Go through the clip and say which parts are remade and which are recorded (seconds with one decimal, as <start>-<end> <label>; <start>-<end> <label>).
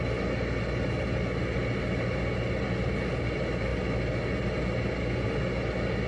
0.0-6.1 recorded